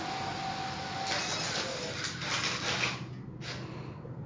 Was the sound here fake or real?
real